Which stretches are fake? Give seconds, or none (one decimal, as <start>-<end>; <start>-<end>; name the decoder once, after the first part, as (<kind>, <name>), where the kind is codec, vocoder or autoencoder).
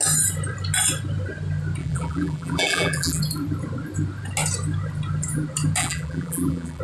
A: 1.8-3.2 (vocoder, BigVGAN v2); 5.8-6.8